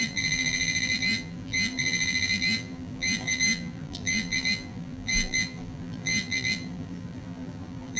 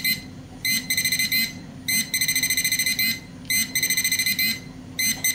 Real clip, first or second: second